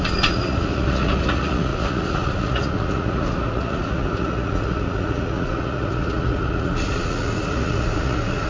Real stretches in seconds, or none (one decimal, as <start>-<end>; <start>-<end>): none